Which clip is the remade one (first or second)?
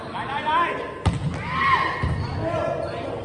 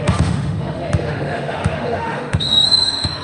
second